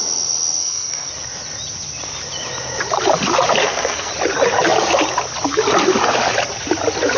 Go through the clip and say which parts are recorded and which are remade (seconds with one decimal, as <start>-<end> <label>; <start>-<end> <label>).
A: 0.0-0.6 recorded; 0.6-1.1 remade; 1.1-3.6 recorded; 3.6-4.1 remade; 4.1-7.2 recorded